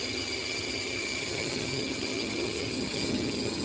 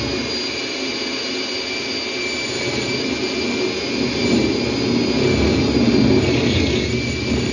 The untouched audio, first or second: second